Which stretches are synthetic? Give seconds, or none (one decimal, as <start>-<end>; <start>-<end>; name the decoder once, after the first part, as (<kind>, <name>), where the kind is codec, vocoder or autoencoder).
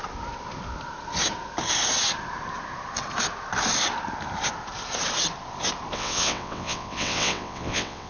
5.9-8.1 (vocoder, WaveNeXt)